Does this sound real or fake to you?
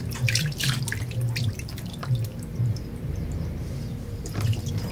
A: fake